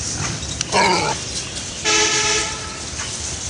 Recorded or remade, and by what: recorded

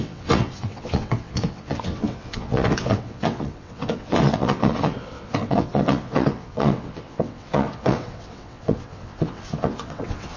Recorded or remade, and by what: remade, vocoder, WaveNeXt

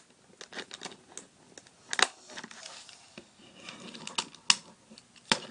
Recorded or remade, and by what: recorded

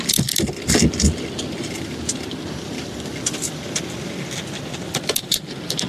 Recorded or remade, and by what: recorded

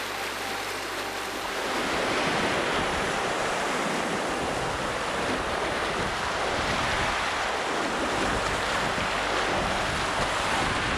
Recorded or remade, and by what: recorded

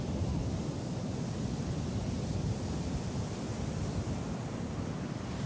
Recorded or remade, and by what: recorded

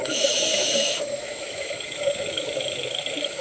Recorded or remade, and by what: remade, autoencoder, DAC-VAE